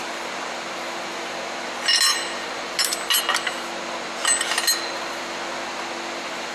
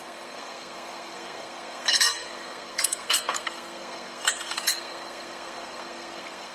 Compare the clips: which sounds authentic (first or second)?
first